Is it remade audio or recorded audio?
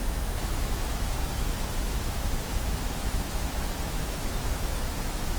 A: remade